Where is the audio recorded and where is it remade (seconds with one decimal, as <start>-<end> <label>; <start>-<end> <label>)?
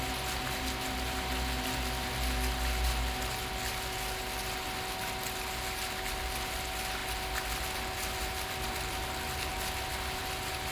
0.0-10.7 recorded